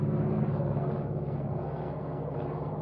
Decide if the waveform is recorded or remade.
remade